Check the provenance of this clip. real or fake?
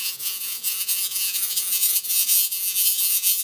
fake